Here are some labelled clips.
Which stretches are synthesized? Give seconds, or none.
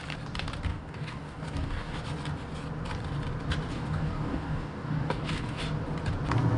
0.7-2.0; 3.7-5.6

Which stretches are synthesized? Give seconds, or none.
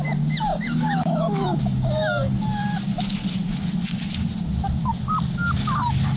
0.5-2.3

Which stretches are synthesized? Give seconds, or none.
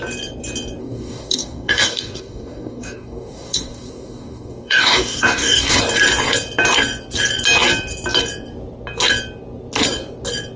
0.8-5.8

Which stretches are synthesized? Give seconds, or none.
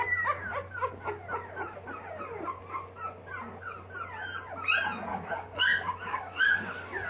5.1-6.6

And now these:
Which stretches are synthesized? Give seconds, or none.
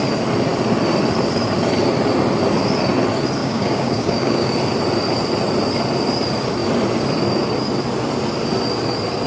3.4-4.5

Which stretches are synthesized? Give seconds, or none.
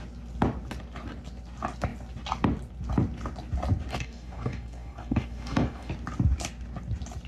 3.9-5.9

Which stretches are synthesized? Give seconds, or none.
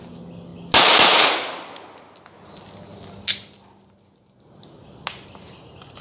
none